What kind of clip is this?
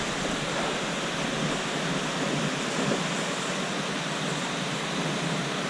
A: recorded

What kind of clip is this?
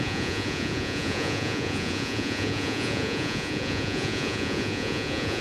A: remade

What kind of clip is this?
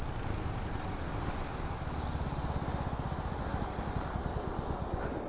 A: recorded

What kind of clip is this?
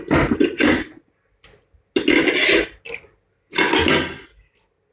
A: recorded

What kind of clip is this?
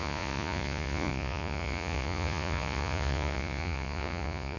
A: remade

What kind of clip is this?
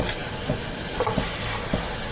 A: recorded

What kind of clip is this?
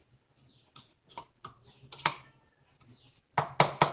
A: recorded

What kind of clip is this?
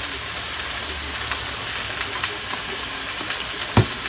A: recorded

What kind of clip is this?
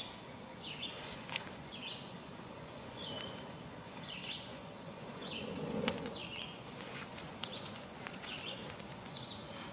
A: remade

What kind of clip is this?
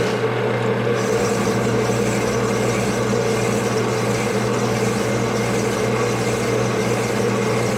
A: recorded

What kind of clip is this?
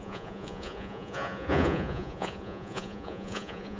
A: remade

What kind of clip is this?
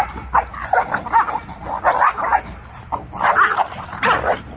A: recorded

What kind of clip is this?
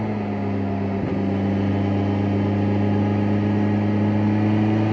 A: recorded